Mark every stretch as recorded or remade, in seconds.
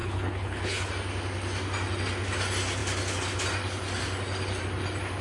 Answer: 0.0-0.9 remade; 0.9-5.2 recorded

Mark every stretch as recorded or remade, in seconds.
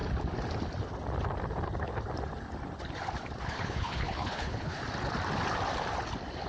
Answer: 0.0-3.4 recorded; 3.4-4.8 remade; 4.8-6.5 recorded